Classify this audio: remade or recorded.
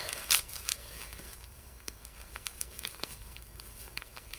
remade